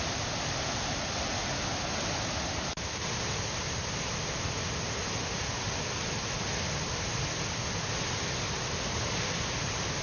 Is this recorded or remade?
recorded